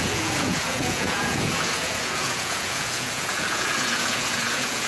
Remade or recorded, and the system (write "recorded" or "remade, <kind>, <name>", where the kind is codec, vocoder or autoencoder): remade, vocoder, Vocos